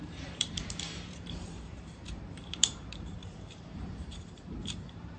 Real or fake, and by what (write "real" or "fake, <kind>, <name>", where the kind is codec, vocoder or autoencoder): fake, vocoder, BigVGAN v2